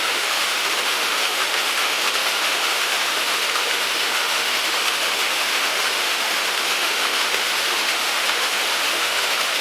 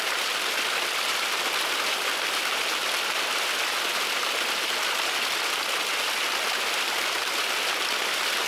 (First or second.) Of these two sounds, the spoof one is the first